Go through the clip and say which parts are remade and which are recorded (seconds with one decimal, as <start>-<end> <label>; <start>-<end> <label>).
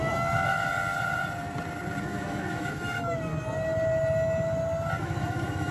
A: 0.0-0.6 remade; 0.6-2.0 recorded; 2.0-3.3 remade; 3.3-5.0 recorded; 5.0-5.7 remade